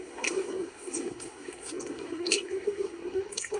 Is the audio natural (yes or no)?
no